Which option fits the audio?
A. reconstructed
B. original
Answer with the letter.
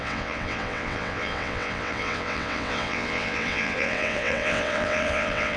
A